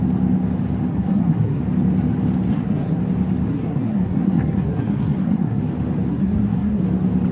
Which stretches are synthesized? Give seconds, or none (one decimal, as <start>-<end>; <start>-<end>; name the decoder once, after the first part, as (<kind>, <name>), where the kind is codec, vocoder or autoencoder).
0.9-1.6 (codec, SNAC); 2.5-3.0; 3.5-5.6; 6.1-6.8